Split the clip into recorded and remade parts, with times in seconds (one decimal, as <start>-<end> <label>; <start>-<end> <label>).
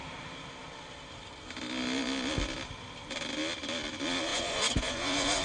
0.0-4.3 recorded; 4.3-5.4 remade